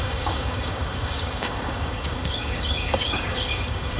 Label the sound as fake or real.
fake